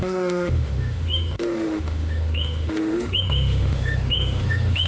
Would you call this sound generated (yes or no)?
yes